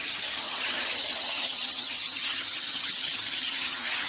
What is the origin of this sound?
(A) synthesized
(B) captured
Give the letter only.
A